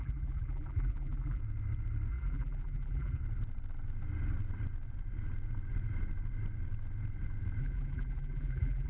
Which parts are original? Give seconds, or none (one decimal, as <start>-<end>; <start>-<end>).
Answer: 1.4-2.1; 3.2-7.6